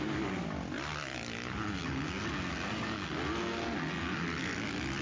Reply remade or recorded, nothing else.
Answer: recorded